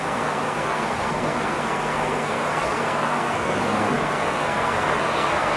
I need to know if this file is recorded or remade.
remade